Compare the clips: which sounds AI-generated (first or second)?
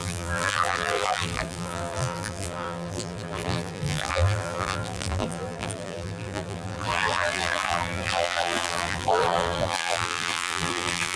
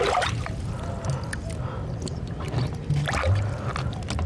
first